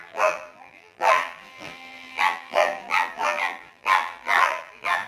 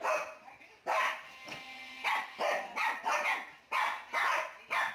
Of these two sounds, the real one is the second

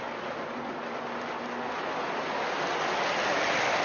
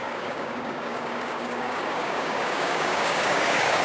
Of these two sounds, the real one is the first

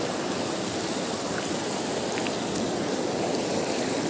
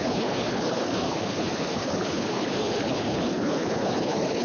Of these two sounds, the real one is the first